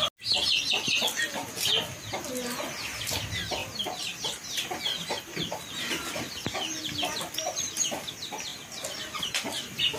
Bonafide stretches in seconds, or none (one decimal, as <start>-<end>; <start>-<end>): 0.0-10.0